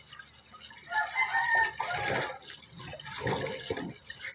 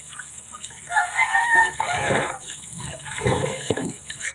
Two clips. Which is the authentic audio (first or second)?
first